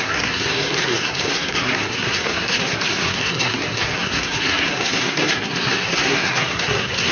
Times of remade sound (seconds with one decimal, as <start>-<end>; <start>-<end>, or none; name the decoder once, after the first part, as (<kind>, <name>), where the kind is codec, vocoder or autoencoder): 0.0-7.1 (codec, SNAC)